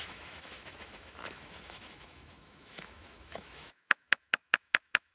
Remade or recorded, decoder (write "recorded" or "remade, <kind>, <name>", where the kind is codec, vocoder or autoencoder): remade, autoencoder, DAC-VAE